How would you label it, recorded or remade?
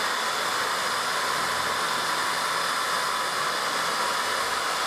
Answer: recorded